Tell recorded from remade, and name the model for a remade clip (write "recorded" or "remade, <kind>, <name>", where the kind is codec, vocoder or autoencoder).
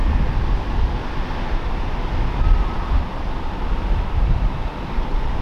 remade, vocoder, BigVGAN v2